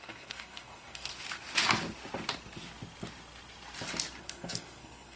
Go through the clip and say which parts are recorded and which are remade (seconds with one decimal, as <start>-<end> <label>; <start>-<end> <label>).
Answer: 0.0-1.1 remade; 1.1-4.2 recorded; 4.2-5.2 remade